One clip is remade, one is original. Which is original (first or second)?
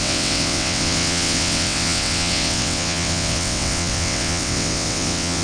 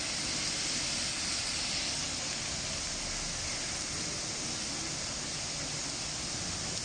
second